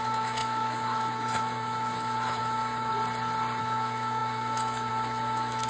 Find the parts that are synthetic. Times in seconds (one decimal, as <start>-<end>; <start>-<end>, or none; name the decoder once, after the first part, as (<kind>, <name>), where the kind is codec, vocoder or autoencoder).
0.0-2.9 (autoencoder, DAC-VAE); 3.6-5.7

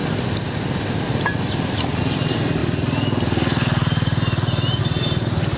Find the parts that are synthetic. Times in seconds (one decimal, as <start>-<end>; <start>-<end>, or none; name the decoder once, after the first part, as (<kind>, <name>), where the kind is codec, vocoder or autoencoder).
2.0-2.6 (vocoder, BigVGAN v2); 4.8-5.6

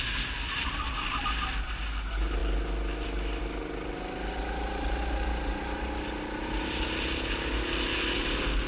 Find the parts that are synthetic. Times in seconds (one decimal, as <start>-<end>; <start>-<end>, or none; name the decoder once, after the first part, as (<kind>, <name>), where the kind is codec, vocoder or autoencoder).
none

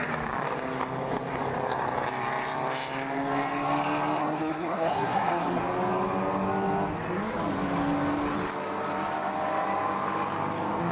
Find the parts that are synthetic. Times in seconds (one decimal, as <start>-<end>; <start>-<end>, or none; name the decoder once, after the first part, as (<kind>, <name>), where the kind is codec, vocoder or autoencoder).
4.2-5.6 (codec, SNAC)

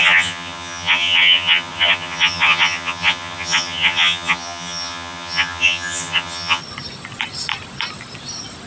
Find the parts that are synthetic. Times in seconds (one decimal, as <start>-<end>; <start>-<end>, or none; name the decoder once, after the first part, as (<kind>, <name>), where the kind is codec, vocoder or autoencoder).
0.0-6.6 (vocoder, HiFi-GAN)

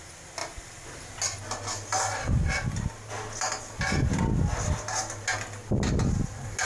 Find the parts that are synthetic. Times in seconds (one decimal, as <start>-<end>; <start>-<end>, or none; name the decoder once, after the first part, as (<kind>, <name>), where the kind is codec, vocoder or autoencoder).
none